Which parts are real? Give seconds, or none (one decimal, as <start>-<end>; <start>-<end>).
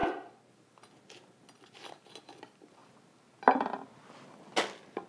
0.0-5.1